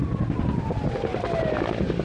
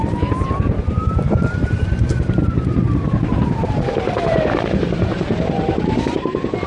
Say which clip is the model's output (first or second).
second